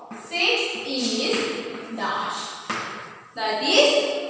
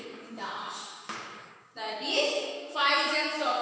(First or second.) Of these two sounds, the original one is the first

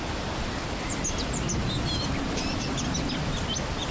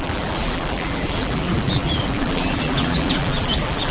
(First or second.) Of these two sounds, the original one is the first